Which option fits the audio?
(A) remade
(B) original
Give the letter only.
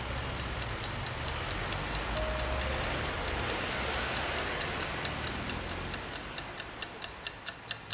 B